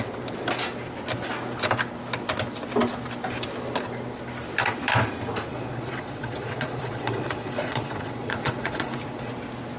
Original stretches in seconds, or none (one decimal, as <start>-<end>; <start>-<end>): 0.0-5.5; 9.3-9.8